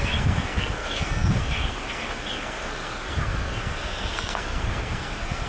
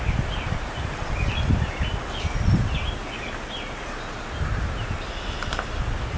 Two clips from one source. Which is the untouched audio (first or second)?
second